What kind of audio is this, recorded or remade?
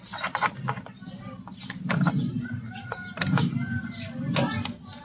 recorded